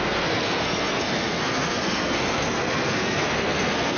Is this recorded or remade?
remade